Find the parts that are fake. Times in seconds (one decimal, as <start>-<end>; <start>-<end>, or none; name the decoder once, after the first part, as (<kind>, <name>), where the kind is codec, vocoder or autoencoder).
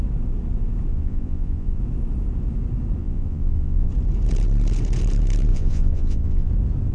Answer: 0.9-1.8 (vocoder, Vocos); 3.0-3.9; 5.5-6.5